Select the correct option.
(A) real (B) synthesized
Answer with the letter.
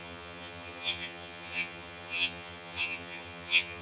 B